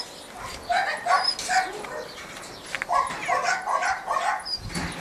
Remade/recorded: recorded